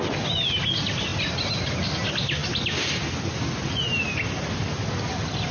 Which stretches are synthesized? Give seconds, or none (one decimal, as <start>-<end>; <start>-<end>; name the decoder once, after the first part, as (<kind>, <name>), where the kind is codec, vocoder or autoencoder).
none